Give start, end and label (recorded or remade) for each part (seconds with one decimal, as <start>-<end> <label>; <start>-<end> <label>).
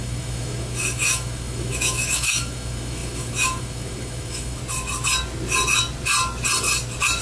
0.0-4.6 remade; 4.6-7.2 recorded